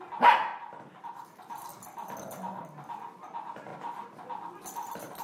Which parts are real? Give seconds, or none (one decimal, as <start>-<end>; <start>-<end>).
0.5-1.0; 1.7-3.2; 3.7-5.2